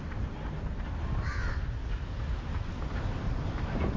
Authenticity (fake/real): real